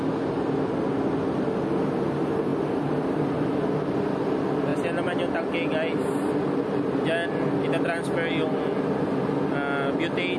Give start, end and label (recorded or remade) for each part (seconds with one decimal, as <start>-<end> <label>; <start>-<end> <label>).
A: 0.0-10.4 recorded